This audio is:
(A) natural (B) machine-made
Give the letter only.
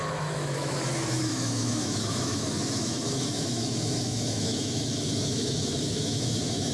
B